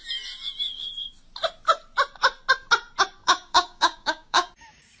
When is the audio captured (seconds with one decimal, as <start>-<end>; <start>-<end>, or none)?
0.0-3.2; 4.5-5.0